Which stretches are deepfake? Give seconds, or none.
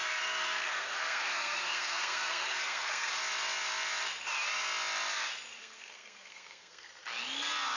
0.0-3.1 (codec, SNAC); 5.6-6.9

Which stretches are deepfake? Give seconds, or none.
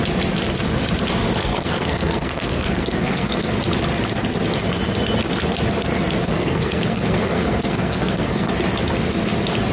1.4-3.5 (codec, SNAC); 6.3-8.5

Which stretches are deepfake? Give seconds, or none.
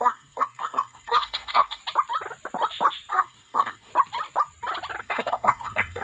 0.0-1.8 (codec, SNAC); 3.1-3.9; 5.0-6.0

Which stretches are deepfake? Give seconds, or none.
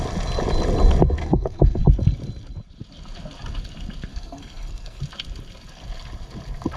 1.2-1.8 (codec, SNAC); 4.1-5.0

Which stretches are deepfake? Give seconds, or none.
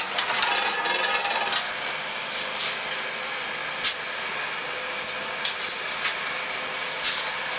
none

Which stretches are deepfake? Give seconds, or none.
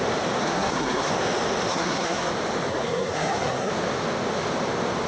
0.4-1.1 (codec, SNAC); 1.7-2.3; 2.7-3.7